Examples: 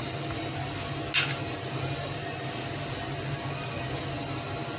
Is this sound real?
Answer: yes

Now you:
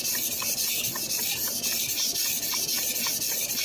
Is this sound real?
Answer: yes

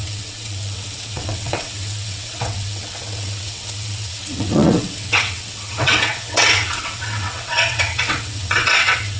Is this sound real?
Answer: no